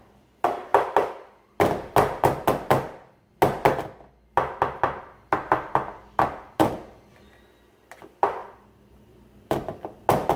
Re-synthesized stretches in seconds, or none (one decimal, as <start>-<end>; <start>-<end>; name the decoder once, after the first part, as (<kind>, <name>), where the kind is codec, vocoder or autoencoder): 8.4-9.8 (vocoder, BigVGAN v2)